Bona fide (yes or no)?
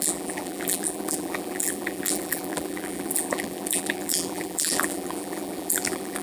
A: no